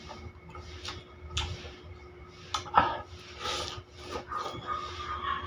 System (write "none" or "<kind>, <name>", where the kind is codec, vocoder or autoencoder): none